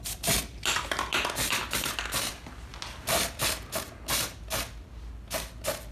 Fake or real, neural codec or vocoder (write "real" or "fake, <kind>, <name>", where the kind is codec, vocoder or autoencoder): real